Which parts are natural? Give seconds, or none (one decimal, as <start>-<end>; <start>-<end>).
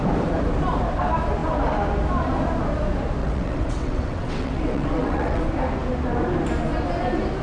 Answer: 0.0-3.2; 5.4-7.4